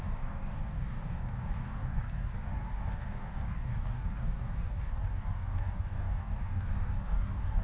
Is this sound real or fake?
fake